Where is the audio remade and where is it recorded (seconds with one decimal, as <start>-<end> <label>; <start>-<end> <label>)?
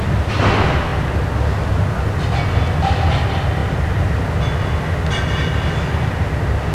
0.0-6.7 recorded